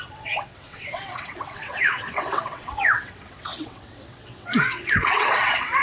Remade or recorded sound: remade